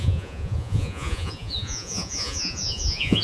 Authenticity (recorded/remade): remade